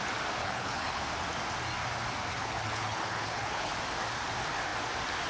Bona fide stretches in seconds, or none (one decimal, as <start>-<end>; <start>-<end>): 0.0-0.4; 1.0-2.3; 3.7-5.3